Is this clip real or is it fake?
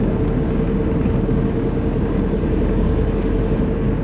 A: fake